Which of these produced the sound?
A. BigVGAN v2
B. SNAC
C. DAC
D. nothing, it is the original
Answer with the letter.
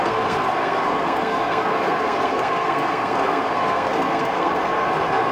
B